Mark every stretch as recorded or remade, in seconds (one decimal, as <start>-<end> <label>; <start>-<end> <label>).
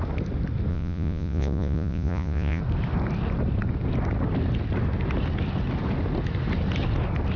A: 0.0-0.7 recorded; 0.7-2.6 remade; 2.6-7.4 recorded